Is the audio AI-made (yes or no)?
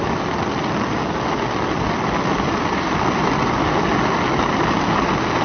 no